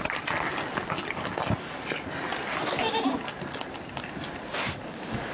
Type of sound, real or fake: real